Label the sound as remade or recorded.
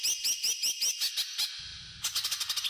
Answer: recorded